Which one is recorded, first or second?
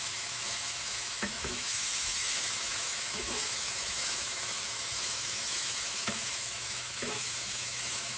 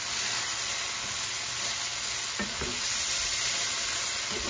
second